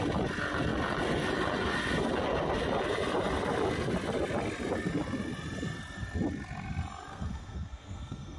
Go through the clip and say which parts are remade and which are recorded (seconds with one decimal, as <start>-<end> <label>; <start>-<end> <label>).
0.0-7.1 recorded; 7.1-8.4 remade